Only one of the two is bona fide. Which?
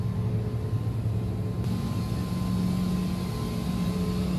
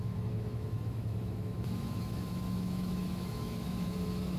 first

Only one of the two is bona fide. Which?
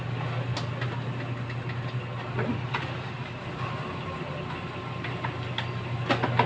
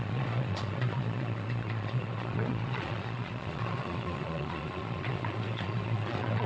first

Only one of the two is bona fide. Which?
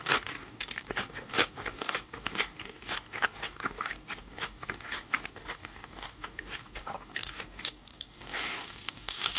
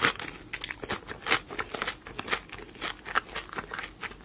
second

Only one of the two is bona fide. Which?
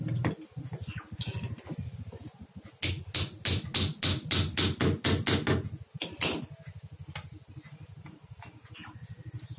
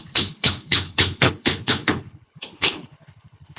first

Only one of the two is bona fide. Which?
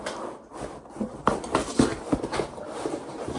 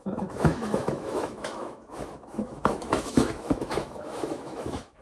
first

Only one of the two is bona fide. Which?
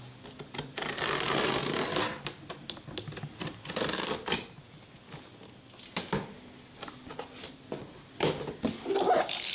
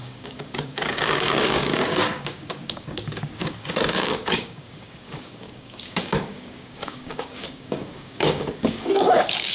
first